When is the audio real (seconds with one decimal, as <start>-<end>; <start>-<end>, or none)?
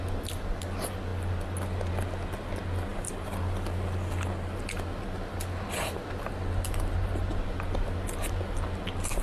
0.0-9.2